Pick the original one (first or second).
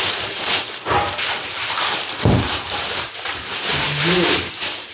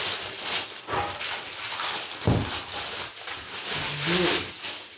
second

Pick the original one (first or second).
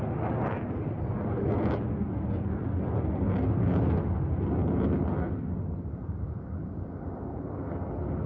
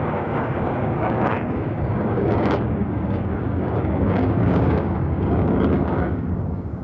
first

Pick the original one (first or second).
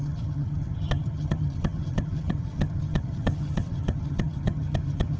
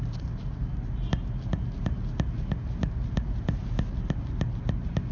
second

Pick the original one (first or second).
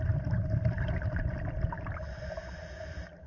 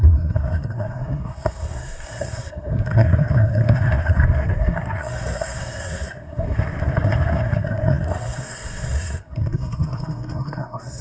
first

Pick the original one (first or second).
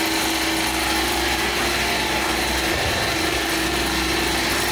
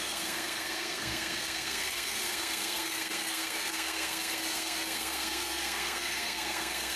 first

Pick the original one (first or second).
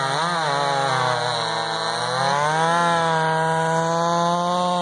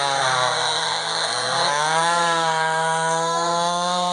first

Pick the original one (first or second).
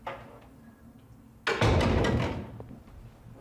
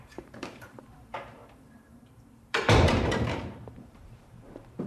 first